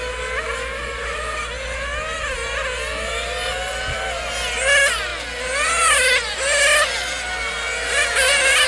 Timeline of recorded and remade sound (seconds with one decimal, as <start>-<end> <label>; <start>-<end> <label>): 0.0-8.7 recorded